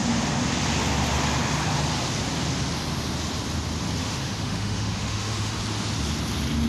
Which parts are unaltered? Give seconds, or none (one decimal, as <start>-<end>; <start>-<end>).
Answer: 0.0-4.0; 5.6-6.7